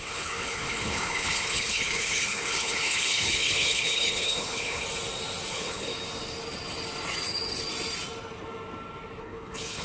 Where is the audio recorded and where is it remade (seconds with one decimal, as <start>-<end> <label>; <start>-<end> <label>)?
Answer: 0.0-4.8 remade; 4.8-5.5 recorded; 5.5-5.9 remade; 5.9-9.2 recorded; 9.2-9.8 remade